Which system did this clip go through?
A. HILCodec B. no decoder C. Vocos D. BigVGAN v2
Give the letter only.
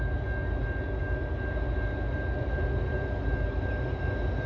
B